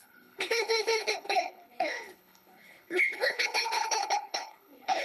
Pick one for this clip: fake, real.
fake